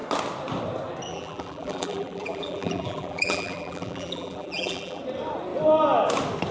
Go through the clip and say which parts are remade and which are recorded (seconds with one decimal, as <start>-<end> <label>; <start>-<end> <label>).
0.0-1.1 recorded; 1.1-5.0 remade; 5.0-6.5 recorded